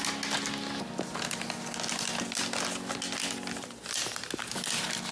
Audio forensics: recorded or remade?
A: recorded